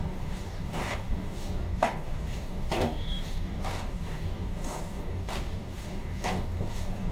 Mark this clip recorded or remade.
remade